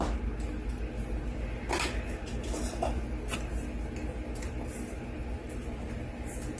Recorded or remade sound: recorded